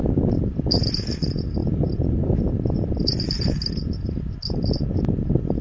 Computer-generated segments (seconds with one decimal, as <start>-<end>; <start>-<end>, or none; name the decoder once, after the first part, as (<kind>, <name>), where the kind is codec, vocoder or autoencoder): none